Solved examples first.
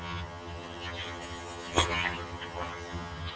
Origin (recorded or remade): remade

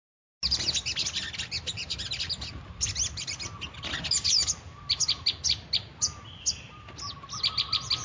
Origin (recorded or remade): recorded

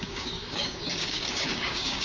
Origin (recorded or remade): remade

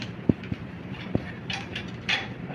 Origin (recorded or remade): remade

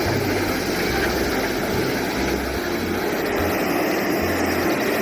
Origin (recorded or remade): recorded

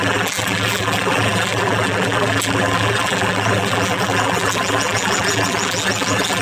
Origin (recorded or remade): remade